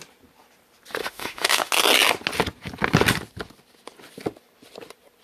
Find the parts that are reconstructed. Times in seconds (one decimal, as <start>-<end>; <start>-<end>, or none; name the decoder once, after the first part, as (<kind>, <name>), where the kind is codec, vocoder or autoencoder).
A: 1.0-1.7 (autoencoder, DAC-VAE)

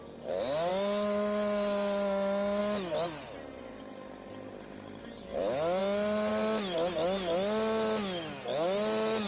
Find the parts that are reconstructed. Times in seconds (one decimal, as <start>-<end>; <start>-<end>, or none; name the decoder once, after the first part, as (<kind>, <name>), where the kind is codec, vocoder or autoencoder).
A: none

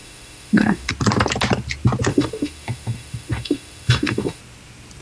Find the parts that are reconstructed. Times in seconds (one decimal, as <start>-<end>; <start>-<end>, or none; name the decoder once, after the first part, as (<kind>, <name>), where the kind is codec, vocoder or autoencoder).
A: 0.0-0.9 (autoencoder, DAC-VAE); 2.1-4.4

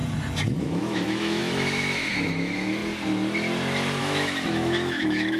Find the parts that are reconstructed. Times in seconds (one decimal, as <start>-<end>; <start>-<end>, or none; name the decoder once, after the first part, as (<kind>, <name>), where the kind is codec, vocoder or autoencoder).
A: 0.6-2.8 (autoencoder, DAC-VAE); 4.0-5.4

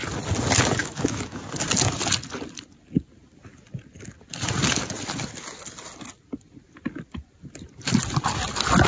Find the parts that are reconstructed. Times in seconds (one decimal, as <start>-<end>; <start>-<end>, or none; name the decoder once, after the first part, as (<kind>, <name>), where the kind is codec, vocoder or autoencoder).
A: 0.8-1.4 (autoencoder, DAC-VAE)

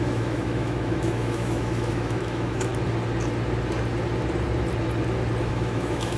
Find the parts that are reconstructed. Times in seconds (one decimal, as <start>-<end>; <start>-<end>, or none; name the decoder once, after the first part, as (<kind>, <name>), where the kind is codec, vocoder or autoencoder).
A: 0.0-2.7 (autoencoder, DAC-VAE); 5.4-6.2

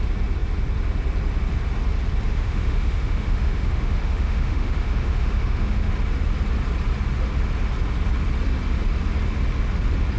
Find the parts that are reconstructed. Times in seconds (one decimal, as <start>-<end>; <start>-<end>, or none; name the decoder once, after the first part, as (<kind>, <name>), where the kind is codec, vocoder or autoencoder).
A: 2.3-5.9 (autoencoder, DAC-VAE)

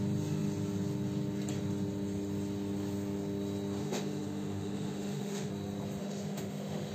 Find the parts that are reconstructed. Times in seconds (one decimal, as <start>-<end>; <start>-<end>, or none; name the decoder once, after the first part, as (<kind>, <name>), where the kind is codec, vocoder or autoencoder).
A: 3.8-5.5 (autoencoder, DAC-VAE); 6.0-6.9